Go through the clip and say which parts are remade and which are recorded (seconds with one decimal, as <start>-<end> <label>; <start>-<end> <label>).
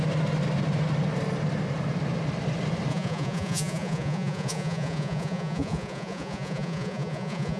0.0-2.9 recorded; 2.9-7.6 remade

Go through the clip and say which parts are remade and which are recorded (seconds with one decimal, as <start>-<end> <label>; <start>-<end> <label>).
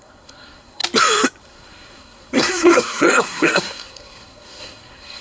0.0-0.8 remade; 0.8-1.4 recorded; 1.4-5.2 remade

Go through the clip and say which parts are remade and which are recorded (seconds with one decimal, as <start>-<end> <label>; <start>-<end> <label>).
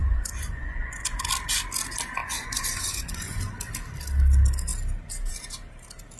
0.0-1.3 remade; 1.3-2.2 recorded; 2.2-3.4 remade; 3.4-6.2 recorded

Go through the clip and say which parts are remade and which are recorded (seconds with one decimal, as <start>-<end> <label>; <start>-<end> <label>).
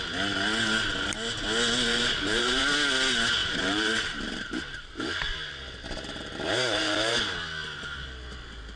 0.0-1.9 recorded; 1.9-2.6 remade; 2.6-3.4 recorded; 3.4-7.2 remade; 7.2-8.8 recorded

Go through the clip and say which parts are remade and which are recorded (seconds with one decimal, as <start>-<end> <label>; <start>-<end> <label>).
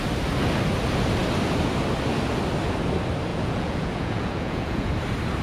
0.0-3.3 recorded; 3.3-4.9 remade; 4.9-5.4 recorded